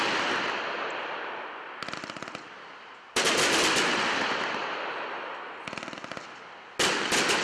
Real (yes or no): yes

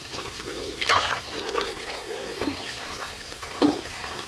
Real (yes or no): no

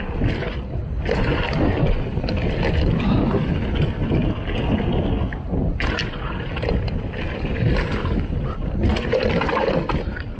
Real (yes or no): yes